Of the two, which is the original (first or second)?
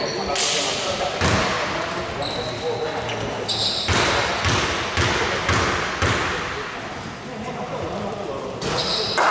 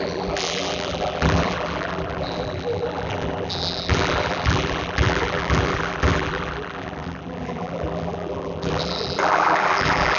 first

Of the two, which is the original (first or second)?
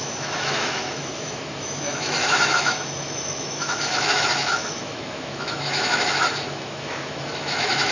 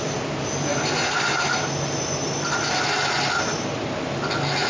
second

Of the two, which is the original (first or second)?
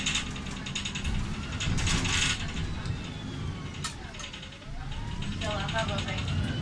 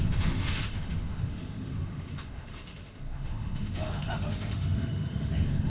first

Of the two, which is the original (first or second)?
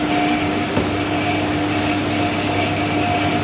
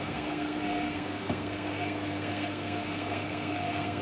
first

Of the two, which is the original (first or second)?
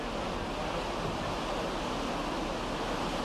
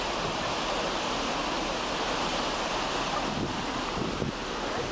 first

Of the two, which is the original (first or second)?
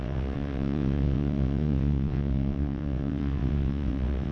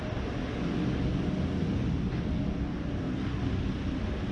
second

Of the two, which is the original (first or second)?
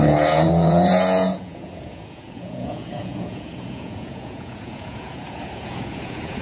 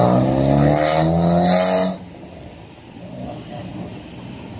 second